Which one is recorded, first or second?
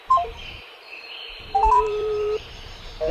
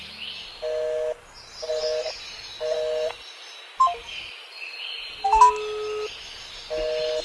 second